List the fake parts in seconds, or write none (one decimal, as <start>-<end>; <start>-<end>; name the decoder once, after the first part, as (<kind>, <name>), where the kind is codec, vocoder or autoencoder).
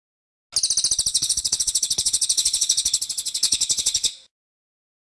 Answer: 1.1-4.1 (codec, HILCodec)